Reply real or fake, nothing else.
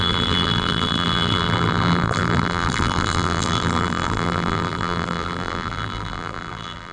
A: fake